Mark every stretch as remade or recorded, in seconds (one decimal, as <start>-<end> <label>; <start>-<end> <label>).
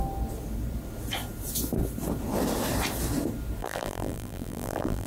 0.0-3.6 recorded; 3.6-5.1 remade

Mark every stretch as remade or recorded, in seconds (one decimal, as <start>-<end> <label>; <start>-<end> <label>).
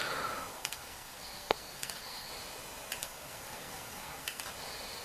0.0-0.5 recorded; 0.5-2.3 remade; 2.3-3.0 recorded; 3.0-4.4 remade; 4.4-5.0 recorded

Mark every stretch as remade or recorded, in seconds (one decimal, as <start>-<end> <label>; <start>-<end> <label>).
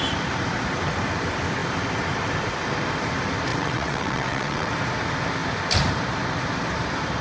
0.0-3.5 recorded; 3.5-4.7 remade; 4.7-7.2 recorded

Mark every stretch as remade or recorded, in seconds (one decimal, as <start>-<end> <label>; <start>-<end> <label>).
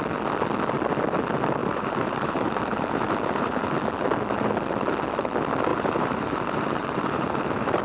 0.0-1.6 recorded; 1.6-3.6 remade; 3.6-5.7 recorded; 5.7-7.8 remade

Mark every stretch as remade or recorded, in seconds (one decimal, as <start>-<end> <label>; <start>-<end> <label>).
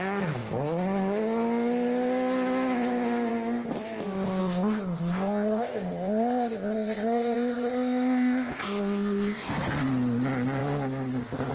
0.0-4.4 recorded; 4.4-9.5 remade; 9.5-11.5 recorded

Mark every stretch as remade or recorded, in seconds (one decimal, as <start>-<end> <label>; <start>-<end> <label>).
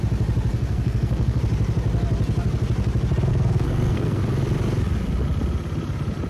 0.0-0.5 recorded; 0.5-1.4 remade; 1.4-3.3 recorded; 3.3-4.2 remade; 4.2-6.3 recorded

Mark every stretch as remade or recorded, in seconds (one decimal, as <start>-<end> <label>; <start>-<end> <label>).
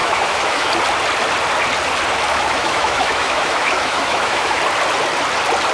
0.0-0.7 remade; 0.7-2.3 recorded; 2.3-4.6 remade; 4.6-5.7 recorded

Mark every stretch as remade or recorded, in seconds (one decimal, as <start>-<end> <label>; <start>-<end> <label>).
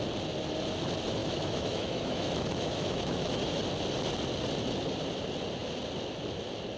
0.0-1.2 recorded; 1.2-3.6 remade; 3.6-6.8 recorded